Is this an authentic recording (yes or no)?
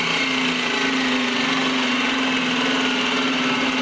no